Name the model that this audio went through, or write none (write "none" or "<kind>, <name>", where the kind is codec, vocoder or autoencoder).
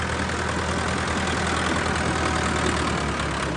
none